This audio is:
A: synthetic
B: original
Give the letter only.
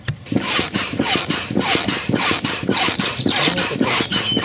B